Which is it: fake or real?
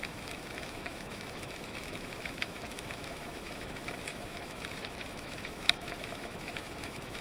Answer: fake